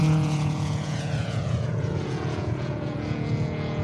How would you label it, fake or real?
fake